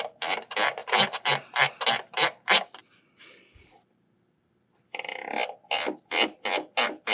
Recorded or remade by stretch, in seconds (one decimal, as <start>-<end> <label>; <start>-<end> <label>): 0.0-7.1 recorded